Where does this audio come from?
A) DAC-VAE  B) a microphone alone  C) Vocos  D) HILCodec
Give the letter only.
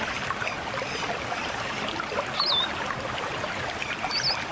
B